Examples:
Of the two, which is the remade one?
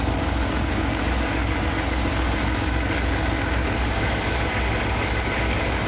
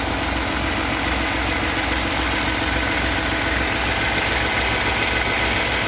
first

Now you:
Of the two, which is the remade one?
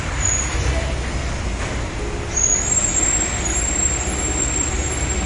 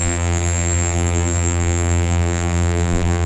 second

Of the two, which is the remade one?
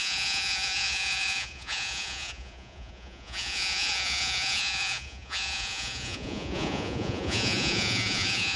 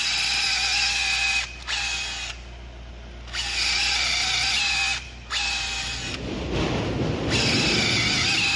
first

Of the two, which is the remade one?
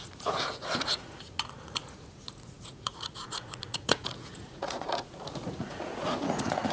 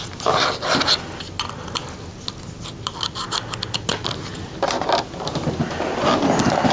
first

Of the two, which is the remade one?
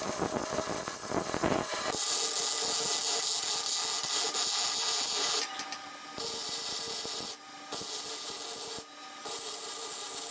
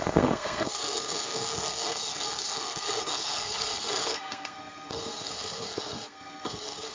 second